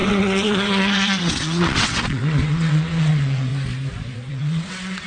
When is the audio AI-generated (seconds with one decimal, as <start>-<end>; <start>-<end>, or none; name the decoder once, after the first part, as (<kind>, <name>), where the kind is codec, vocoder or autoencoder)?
0.0-3.5 (vocoder, WaveNeXt); 4.3-5.1